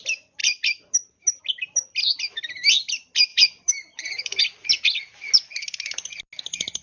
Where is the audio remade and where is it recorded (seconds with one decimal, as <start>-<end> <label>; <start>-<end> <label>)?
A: 0.0-3.3 recorded; 3.3-4.4 remade; 4.4-6.8 recorded